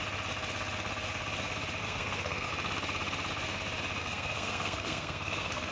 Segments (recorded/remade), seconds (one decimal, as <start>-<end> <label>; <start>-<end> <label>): 0.0-1.8 recorded; 1.8-2.5 remade; 2.5-4.0 recorded; 4.0-5.7 remade